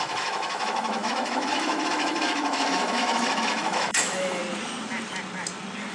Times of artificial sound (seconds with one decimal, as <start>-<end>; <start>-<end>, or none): 0.0-4.4